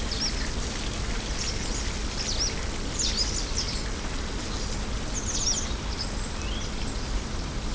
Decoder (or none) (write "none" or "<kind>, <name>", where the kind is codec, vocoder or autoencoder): none